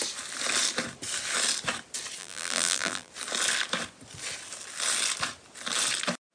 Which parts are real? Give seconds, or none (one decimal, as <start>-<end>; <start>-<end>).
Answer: 0.0-2.2; 3.1-6.3